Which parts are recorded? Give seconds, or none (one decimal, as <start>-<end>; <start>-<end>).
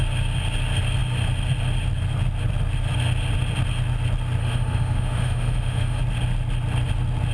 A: 0.0-4.4; 6.0-7.3